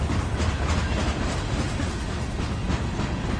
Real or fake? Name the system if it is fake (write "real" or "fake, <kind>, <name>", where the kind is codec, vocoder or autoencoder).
real